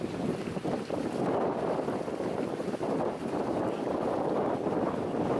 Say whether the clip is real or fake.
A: fake